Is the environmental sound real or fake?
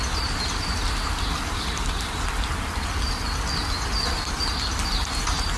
real